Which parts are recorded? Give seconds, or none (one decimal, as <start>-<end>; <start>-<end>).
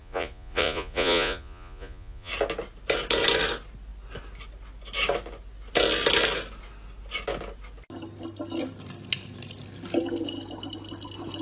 2.3-11.4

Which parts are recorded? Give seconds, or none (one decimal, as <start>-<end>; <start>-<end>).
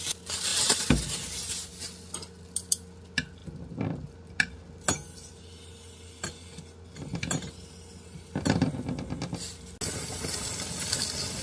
0.0-11.4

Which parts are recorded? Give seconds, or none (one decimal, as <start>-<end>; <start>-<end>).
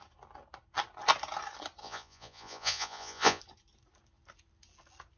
0.0-1.8; 3.4-5.2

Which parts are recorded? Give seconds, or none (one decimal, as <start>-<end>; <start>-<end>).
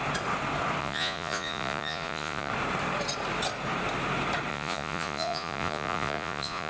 0.0-0.8; 2.5-4.5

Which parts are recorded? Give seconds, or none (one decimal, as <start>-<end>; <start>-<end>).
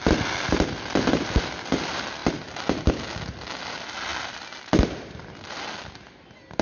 0.0-6.6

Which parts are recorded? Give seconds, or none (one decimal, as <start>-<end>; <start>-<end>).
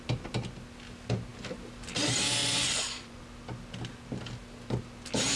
0.0-2.4; 3.2-5.4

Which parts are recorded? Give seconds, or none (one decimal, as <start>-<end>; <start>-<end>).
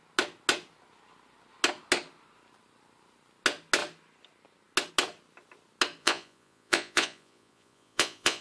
0.0-6.0